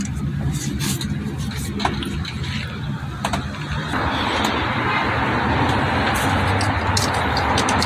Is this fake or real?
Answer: real